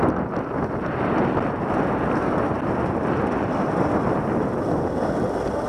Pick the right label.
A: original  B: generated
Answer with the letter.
A